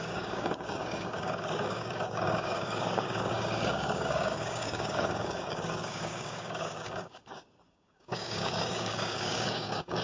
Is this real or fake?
fake